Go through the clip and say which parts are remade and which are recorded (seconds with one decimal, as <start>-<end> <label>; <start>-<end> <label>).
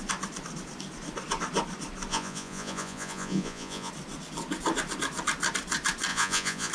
0.0-2.1 recorded; 2.1-3.9 remade; 3.9-6.1 recorded; 6.1-6.7 remade